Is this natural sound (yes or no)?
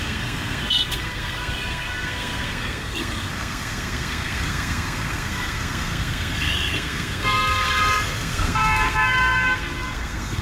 no